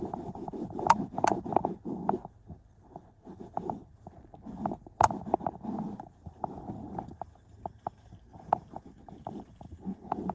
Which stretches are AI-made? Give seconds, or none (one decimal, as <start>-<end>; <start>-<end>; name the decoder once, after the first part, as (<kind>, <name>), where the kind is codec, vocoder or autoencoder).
none